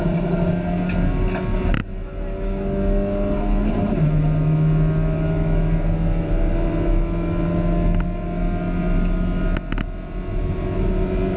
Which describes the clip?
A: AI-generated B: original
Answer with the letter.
B